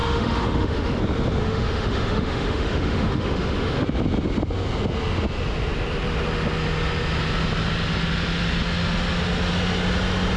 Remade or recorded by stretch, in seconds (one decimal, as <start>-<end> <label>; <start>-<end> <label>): 0.0-1.0 remade; 1.0-1.4 recorded; 1.4-3.8 remade; 3.8-10.4 recorded